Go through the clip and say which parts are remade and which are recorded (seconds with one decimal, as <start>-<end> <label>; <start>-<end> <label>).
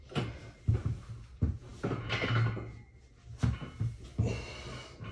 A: 0.0-5.1 recorded